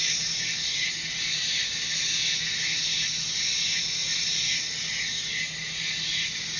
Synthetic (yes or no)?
no